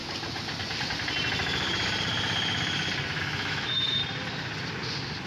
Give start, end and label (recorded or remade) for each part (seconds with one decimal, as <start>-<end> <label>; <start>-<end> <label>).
0.0-3.2 recorded; 3.2-4.0 remade; 4.0-5.3 recorded